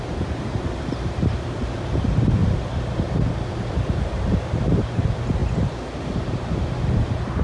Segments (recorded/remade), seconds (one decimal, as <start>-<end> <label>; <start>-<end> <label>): 0.0-2.4 remade; 2.4-3.7 recorded; 3.7-5.4 remade; 5.4-6.0 recorded; 6.0-7.4 remade